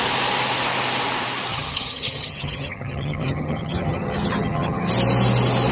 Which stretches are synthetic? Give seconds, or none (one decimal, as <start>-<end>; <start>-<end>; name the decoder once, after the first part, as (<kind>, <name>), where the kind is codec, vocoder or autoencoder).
1.5-4.9 (vocoder, HiFi-GAN)